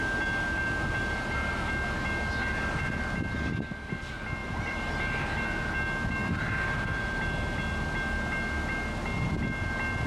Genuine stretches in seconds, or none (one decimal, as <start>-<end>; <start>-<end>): 0.0-4.4; 4.9-6.2; 7.0-10.1